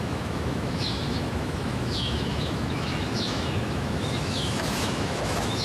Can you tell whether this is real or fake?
fake